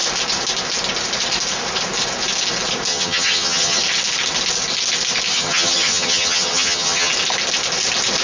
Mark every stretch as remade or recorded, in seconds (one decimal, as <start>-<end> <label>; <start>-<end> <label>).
0.0-2.9 recorded; 2.9-3.8 remade; 3.8-5.3 recorded; 5.3-7.1 remade; 7.1-8.2 recorded